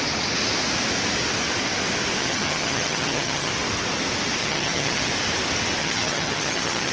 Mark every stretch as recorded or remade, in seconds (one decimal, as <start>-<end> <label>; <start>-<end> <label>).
0.0-2.2 recorded; 2.2-3.5 remade; 3.5-4.4 recorded; 4.4-5.1 remade; 5.1-5.8 recorded; 5.8-6.9 remade